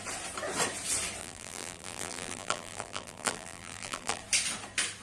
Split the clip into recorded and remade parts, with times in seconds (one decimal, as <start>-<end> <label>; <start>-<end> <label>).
0.0-1.2 recorded; 1.2-4.2 remade; 4.2-5.0 recorded

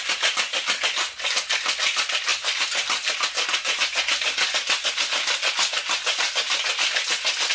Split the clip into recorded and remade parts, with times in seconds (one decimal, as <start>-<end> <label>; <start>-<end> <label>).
0.0-7.5 recorded